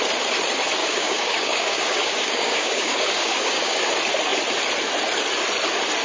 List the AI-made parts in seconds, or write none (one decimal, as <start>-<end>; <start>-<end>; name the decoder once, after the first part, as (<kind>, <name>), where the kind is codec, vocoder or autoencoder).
0.8-3.9 (codec, DAC)